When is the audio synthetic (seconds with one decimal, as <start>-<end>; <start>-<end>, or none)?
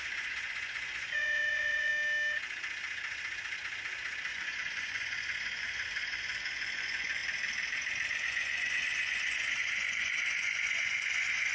0.0-1.9; 4.3-7.2; 8.1-11.5